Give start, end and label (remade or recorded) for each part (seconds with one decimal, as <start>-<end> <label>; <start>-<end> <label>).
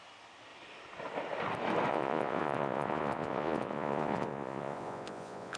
0.0-1.9 recorded; 1.9-5.6 remade